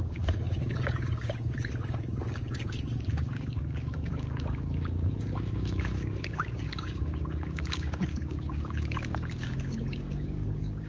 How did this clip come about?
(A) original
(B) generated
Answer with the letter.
B